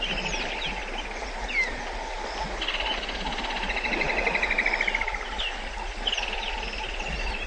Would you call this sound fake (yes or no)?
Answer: no